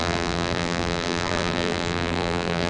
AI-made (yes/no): yes